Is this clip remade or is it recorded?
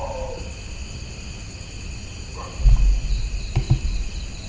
recorded